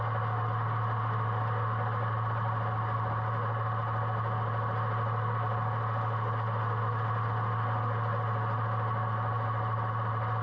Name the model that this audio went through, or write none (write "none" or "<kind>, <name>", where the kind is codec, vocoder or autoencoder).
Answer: none